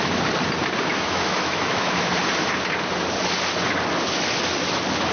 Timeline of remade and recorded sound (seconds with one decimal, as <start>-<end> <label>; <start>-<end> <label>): 0.0-0.9 recorded; 0.9-2.1 remade; 2.1-5.1 recorded